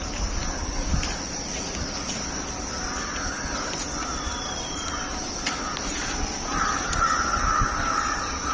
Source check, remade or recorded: recorded